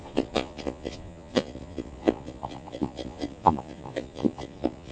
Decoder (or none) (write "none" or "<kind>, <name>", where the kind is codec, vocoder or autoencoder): vocoder, Vocos